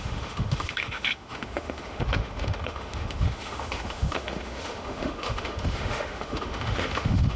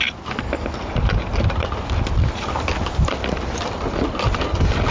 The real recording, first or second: second